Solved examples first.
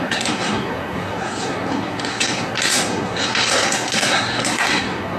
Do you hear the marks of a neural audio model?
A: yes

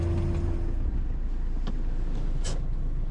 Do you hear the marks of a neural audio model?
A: no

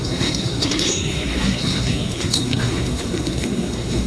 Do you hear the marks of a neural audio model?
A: yes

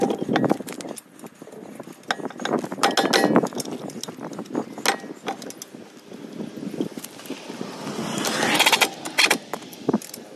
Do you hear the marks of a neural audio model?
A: no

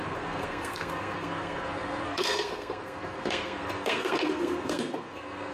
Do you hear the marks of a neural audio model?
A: yes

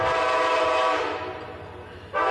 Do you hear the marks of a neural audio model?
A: no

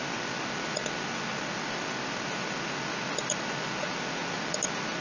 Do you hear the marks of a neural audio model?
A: no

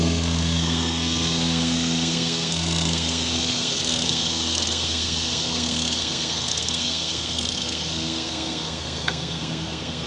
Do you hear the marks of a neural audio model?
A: yes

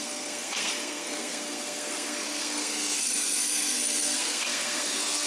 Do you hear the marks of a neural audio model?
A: yes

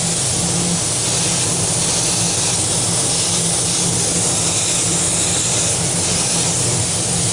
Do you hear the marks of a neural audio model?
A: no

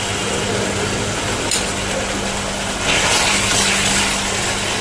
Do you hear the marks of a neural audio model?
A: no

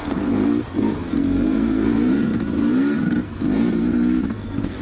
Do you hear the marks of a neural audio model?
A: yes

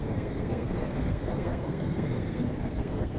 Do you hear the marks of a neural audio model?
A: yes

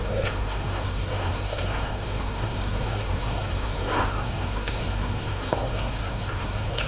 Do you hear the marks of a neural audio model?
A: yes